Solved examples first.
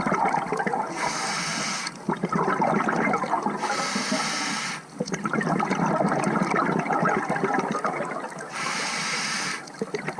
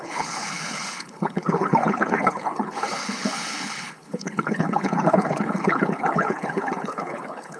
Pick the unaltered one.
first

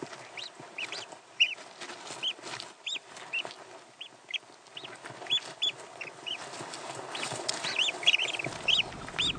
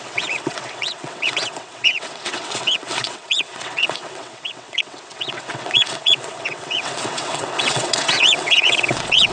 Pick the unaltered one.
first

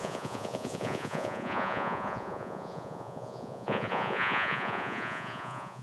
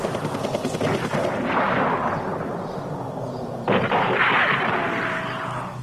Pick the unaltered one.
second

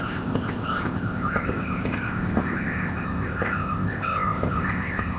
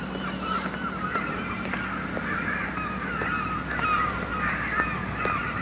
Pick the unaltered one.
second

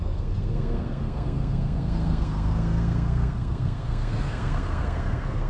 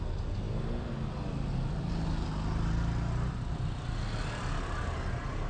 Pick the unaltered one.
second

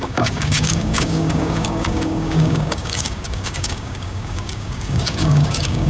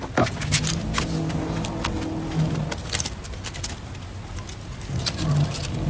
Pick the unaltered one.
second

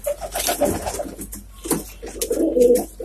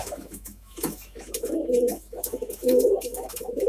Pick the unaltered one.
first